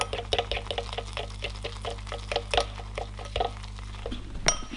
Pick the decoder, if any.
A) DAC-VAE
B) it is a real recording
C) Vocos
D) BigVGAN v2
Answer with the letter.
B